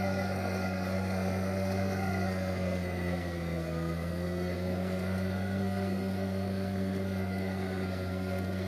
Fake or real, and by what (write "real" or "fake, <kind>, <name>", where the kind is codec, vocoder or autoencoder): fake, codec, SNAC